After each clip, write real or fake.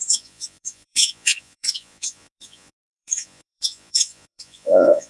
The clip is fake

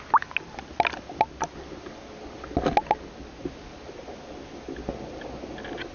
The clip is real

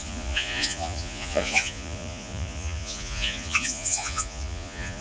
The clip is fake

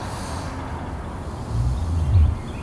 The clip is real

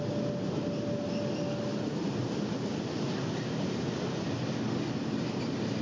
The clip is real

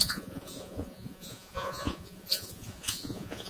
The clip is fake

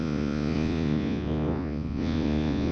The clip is fake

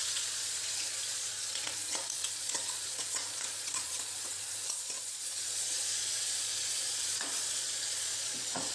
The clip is fake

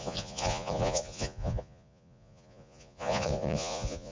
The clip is fake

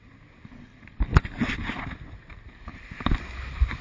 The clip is real